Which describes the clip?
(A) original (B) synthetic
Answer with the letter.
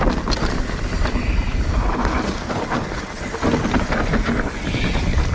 A